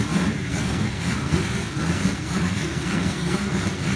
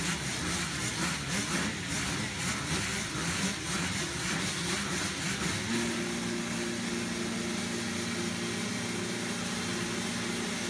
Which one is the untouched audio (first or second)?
second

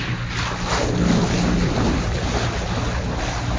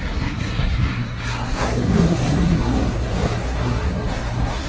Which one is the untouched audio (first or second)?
first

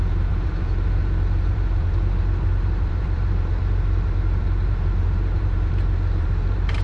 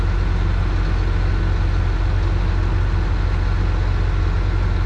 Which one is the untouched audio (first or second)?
second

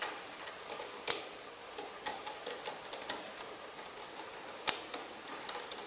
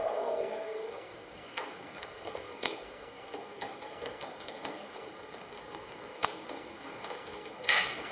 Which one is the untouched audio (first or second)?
first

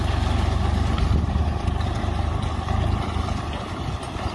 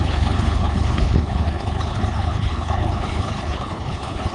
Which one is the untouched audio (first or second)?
first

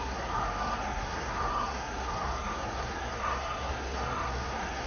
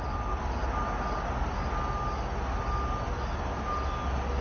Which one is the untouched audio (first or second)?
second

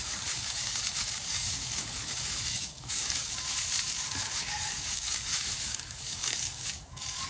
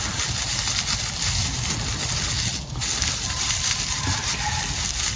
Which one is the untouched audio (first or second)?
second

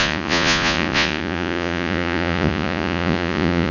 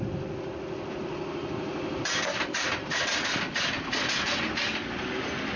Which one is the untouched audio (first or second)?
second